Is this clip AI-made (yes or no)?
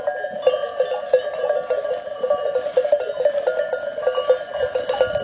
no